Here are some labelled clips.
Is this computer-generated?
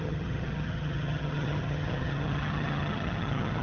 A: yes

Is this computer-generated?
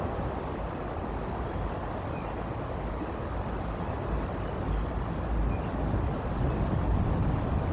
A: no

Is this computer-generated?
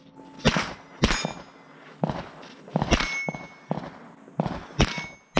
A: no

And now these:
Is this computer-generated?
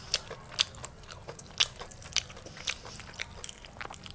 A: no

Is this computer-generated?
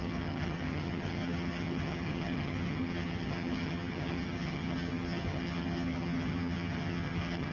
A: yes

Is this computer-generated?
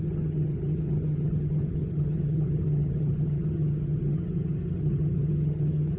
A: yes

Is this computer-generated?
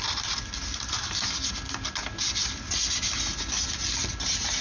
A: no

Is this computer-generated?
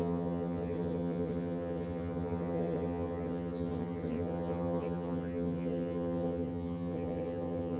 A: yes